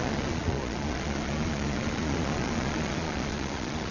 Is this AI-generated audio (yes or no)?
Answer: yes